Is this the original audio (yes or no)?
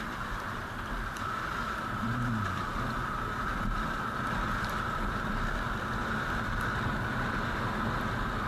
yes